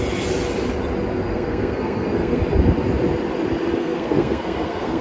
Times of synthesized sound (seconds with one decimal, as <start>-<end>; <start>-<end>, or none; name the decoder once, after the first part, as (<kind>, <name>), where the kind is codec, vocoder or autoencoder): 1.3-2.4 (codec, SNAC); 3.8-5.0